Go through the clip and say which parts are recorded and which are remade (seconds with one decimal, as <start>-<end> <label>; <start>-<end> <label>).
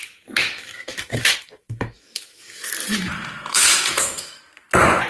0.0-0.4 recorded; 0.4-2.7 remade; 2.7-3.5 recorded; 3.5-4.4 remade; 4.4-5.1 recorded